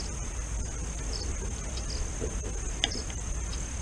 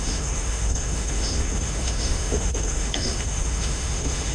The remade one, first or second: second